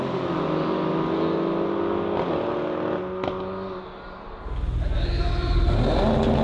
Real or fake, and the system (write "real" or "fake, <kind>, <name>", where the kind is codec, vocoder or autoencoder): real